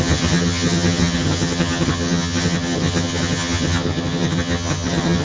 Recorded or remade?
remade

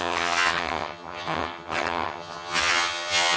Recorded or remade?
remade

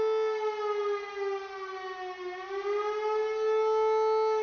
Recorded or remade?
recorded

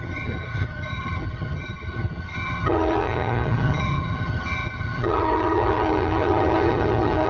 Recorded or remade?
remade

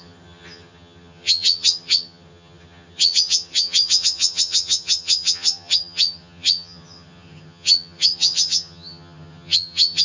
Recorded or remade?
remade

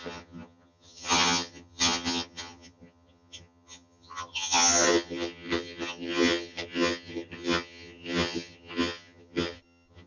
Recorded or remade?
remade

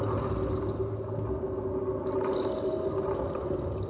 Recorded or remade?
recorded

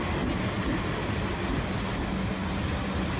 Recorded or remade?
recorded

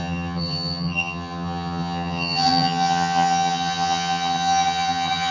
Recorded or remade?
remade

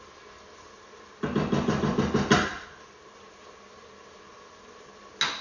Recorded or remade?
recorded